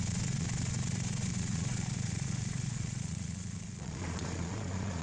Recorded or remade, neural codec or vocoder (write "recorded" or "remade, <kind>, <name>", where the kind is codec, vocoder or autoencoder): remade, vocoder, Vocos